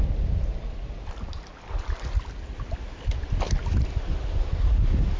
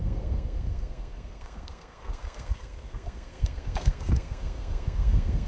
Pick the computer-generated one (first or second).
second